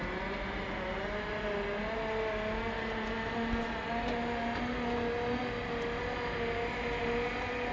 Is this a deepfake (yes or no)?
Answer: no